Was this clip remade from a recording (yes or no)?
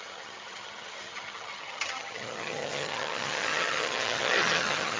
yes